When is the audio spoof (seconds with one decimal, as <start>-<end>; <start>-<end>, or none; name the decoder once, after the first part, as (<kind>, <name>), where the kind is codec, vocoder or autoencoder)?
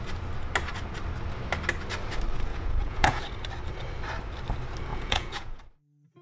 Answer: 2.5-3.2 (vocoder, Vocos); 4.9-5.6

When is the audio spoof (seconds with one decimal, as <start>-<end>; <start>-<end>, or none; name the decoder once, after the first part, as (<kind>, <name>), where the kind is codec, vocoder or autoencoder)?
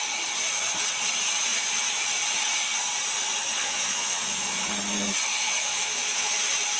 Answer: 3.5-4.7 (vocoder, Vocos); 5.3-6.3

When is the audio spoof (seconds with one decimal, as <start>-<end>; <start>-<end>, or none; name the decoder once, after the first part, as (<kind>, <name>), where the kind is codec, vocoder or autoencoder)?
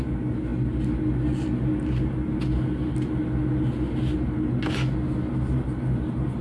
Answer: none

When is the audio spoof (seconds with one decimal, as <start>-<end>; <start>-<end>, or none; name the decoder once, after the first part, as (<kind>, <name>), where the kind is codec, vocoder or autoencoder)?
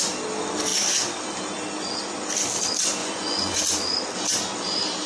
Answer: 3.0-3.6 (vocoder, Vocos)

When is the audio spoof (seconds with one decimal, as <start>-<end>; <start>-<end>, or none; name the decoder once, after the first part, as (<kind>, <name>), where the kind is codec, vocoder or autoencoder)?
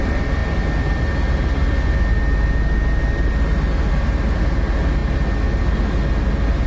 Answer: none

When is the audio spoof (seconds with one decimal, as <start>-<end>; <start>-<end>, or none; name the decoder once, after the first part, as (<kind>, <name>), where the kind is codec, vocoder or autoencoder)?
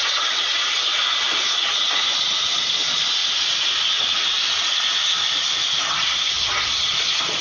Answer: 0.0-3.2 (vocoder, Vocos); 5.8-7.4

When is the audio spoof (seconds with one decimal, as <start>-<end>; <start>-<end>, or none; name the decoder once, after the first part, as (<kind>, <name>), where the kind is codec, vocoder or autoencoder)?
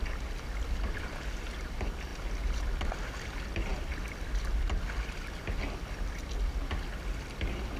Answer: none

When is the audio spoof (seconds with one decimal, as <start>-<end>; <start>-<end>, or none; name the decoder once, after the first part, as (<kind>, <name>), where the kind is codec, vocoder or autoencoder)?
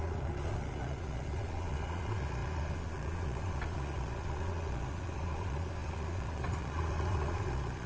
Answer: 0.0-7.9 (vocoder, Vocos)